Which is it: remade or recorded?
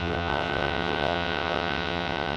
remade